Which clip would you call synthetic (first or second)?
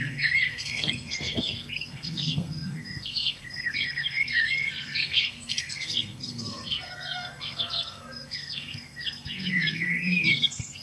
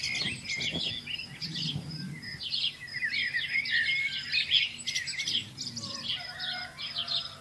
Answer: first